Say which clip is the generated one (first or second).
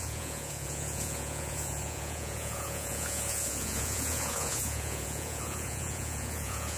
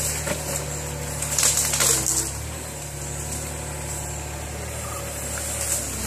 first